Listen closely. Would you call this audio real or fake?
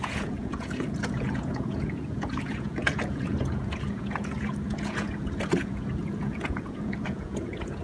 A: fake